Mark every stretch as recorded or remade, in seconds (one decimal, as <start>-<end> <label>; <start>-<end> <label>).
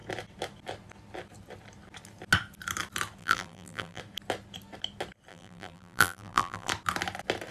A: 0.0-3.2 recorded; 3.2-4.0 remade; 4.0-5.3 recorded; 5.3-6.7 remade; 6.7-7.5 recorded